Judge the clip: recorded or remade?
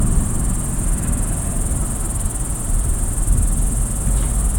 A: recorded